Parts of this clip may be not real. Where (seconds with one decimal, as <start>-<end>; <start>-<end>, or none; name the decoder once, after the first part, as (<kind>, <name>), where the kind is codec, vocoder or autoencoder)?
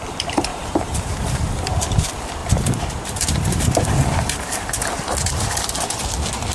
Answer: 0.5-1.4 (vocoder, BigVGAN v2); 2.4-4.6